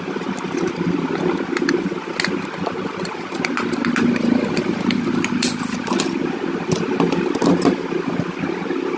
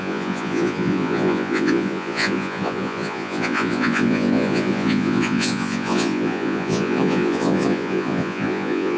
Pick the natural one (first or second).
first